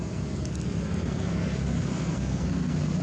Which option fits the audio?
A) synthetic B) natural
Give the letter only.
A